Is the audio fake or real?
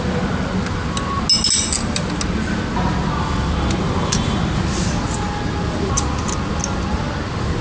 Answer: real